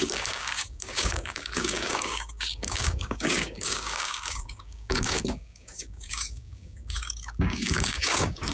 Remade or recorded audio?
remade